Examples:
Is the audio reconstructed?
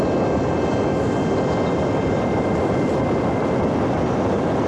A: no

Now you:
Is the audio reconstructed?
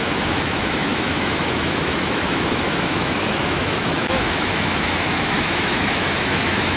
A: yes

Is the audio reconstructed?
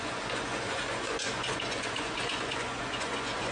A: yes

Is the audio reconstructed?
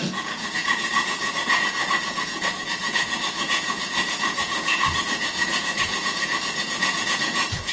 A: yes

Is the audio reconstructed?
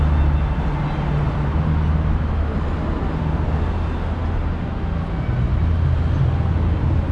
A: no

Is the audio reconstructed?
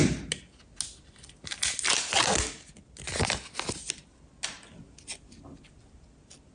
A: no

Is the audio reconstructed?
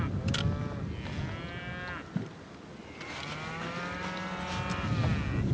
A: no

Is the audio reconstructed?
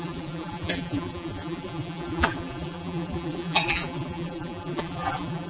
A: yes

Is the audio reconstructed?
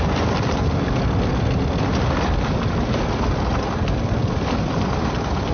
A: no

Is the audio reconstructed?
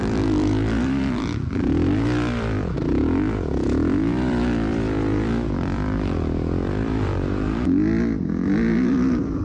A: yes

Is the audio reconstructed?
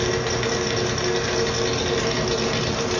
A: no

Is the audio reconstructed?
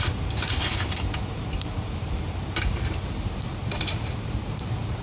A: yes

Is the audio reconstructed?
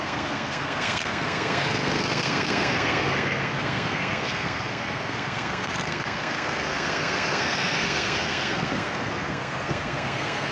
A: yes